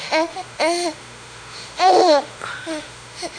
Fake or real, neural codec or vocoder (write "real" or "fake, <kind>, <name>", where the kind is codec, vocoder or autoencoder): fake, autoencoder, DAC-VAE